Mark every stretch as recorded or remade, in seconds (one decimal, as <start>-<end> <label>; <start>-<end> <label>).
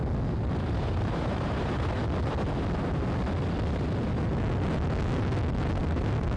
0.0-0.6 recorded; 0.6-2.0 remade; 2.0-5.8 recorded; 5.8-6.4 remade